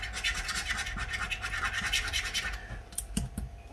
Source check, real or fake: real